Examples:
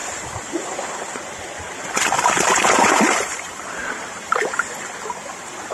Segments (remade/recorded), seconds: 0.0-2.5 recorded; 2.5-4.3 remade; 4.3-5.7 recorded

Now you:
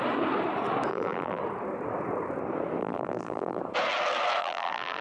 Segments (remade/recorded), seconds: 0.0-0.9 recorded; 0.9-1.4 remade; 1.4-2.8 recorded; 2.8-3.6 remade; 3.6-4.4 recorded; 4.4-5.0 remade

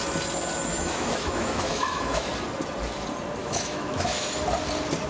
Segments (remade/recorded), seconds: 0.0-0.7 recorded; 0.7-2.3 remade; 2.3-3.4 recorded; 3.4-4.3 remade; 4.3-5.1 recorded

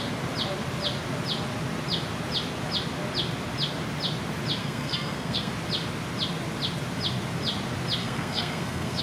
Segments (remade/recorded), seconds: 0.0-4.6 recorded; 4.6-5.5 remade; 5.5-8.0 recorded; 8.0-9.0 remade

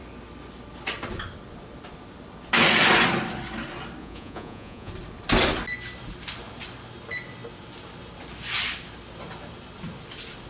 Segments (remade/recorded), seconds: 0.0-4.0 recorded; 4.0-4.9 remade; 4.9-10.5 recorded